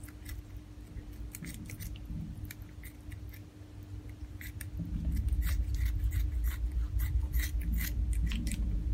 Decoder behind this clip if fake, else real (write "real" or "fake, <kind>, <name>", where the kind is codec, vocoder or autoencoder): real